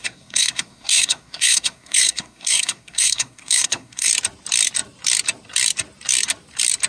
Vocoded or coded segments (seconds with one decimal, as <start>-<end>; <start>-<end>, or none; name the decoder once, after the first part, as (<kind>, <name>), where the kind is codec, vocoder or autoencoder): 0.0-4.1 (codec, SNAC)